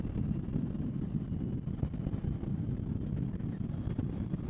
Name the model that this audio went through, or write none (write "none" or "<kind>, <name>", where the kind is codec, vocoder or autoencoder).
none